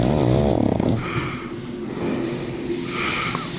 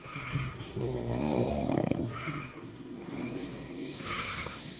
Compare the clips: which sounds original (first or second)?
first